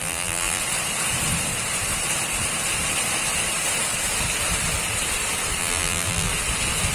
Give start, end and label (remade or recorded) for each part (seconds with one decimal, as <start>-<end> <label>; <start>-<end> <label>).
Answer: 0.0-0.6 remade; 0.6-5.6 recorded; 5.6-6.3 remade; 6.3-6.9 recorded